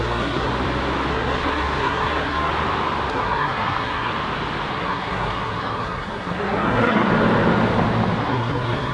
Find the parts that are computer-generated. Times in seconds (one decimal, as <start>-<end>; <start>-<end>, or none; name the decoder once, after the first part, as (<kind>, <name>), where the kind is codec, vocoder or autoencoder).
0.0-0.5 (codec, SNAC); 1.1-2.5; 3.1-4.1; 4.7-7.1; 8.2-8.9